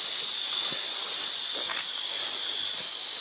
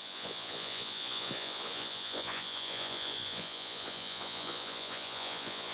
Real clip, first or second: first